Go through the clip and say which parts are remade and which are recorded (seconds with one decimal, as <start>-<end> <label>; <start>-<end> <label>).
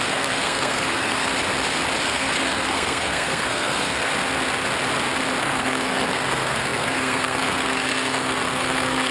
0.0-1.3 remade; 1.3-2.0 recorded; 2.0-4.1 remade; 4.1-5.4 recorded; 5.4-9.1 remade